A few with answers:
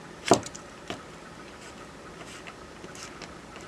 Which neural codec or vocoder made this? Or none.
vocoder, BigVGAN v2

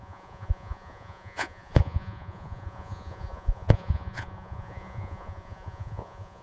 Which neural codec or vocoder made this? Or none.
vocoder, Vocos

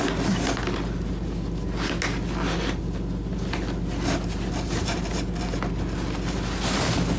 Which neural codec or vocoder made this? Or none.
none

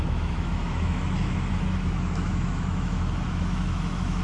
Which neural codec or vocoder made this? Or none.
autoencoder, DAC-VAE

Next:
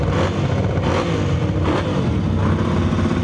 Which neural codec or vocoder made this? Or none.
none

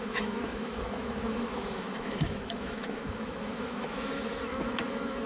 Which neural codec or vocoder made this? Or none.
autoencoder, DAC-VAE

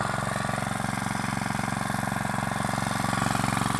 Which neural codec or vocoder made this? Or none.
none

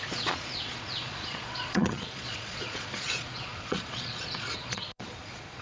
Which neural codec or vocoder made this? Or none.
vocoder, Vocos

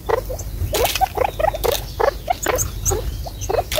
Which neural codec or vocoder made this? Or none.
none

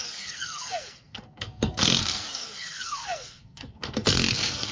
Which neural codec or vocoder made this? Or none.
codec, SNAC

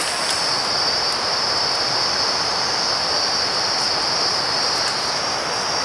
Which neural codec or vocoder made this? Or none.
none